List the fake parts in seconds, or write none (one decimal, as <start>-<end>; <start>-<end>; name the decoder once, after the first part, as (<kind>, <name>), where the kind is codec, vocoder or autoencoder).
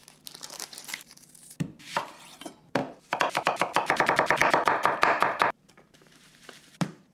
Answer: 0.0-2.8 (vocoder, BigVGAN v2); 3.4-7.1